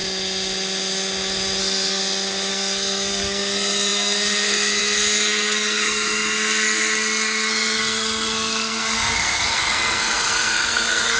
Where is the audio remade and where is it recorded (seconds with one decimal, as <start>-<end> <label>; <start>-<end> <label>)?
0.0-1.6 recorded; 1.6-2.0 remade; 2.0-2.5 recorded; 2.5-11.2 remade